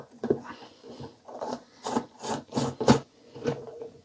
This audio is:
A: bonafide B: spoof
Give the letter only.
B